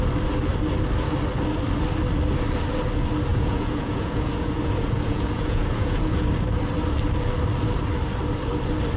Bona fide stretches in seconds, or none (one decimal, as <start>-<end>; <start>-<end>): 0.0-3.3; 6.3-9.0